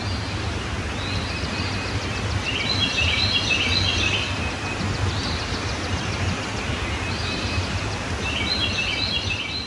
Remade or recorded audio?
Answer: recorded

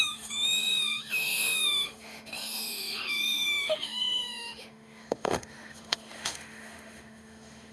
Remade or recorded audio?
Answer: remade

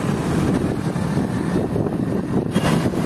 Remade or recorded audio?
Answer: recorded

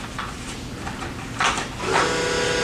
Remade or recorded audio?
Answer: recorded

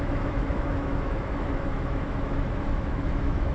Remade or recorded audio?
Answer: remade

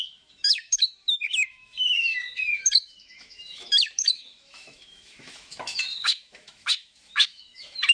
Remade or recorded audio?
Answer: remade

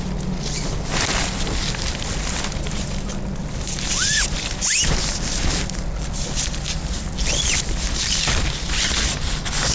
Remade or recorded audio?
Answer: recorded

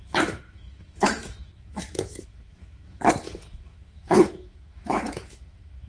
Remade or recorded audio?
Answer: remade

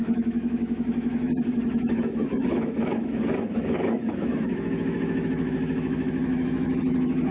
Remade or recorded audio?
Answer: remade